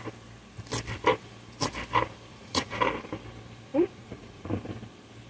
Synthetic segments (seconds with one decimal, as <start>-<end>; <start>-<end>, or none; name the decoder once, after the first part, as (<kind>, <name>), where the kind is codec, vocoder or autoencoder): 2.3-2.8 (vocoder, Vocos); 3.7-4.5